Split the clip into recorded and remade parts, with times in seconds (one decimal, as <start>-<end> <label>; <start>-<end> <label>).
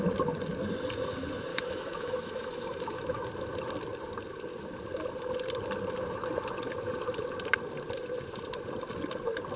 0.0-1.5 recorded; 1.5-3.3 remade; 3.3-9.6 recorded